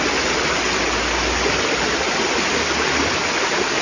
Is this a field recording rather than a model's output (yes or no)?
yes